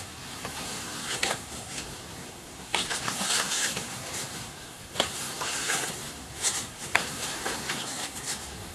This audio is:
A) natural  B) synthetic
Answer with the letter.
B